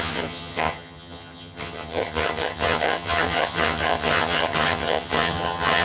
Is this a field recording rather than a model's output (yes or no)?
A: no